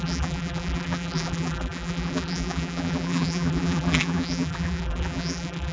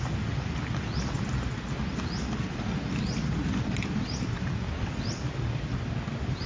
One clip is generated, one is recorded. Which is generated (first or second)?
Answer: first